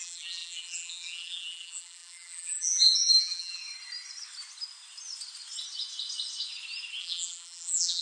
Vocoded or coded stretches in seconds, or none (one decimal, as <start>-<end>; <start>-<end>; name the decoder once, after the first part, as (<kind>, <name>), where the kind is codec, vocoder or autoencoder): 0.0-3.6 (vocoder, BigVGAN v2); 7.0-8.0